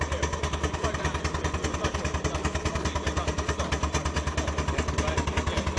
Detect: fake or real real